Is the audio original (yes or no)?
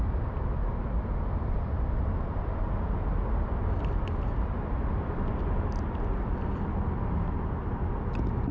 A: yes